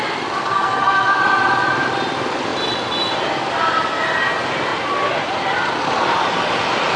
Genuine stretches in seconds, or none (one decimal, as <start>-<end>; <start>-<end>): 0.0-0.4; 1.2-7.0